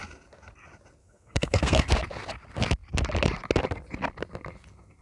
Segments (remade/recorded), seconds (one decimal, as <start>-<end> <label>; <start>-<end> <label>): 0.0-1.0 recorded; 1.0-1.9 remade; 1.9-5.0 recorded